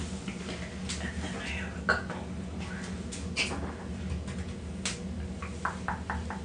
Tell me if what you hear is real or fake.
real